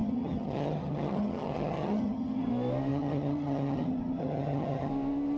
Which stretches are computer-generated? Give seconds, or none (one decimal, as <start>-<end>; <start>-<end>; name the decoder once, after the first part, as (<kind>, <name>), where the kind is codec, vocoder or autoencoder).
0.0-2.5 (vocoder, HiFi-GAN); 2.9-4.9